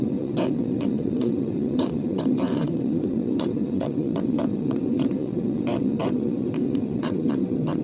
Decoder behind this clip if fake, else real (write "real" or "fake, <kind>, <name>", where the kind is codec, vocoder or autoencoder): fake, vocoder, WaveNeXt